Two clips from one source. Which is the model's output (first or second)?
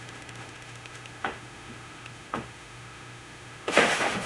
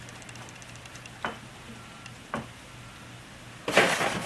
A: first